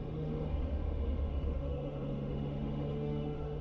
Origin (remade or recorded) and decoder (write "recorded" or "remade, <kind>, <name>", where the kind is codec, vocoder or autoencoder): remade, autoencoder, DAC-VAE